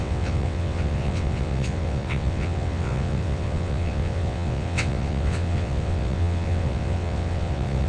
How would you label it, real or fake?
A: fake